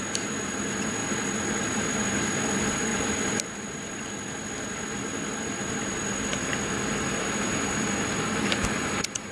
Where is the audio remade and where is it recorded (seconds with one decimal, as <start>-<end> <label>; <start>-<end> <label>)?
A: 0.0-9.3 recorded